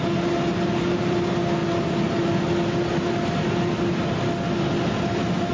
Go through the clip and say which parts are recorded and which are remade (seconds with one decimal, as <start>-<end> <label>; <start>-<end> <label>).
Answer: 0.0-5.5 recorded